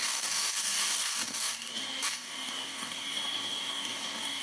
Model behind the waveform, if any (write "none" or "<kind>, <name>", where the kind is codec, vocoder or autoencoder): codec, DAC